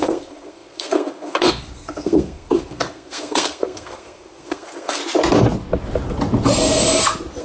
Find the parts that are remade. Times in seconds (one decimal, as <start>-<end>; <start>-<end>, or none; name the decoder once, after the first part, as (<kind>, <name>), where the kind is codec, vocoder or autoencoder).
0.0-5.0 (codec, SNAC)